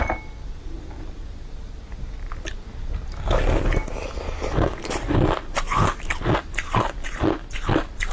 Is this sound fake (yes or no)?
no